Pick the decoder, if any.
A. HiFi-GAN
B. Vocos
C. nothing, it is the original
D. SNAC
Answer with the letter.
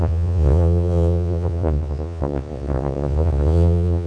B